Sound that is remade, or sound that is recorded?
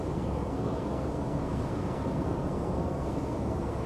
remade